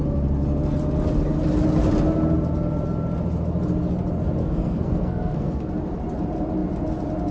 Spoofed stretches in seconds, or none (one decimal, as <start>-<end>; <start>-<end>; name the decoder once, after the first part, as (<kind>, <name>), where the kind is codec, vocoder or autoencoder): 4.4-5.7 (codec, SNAC)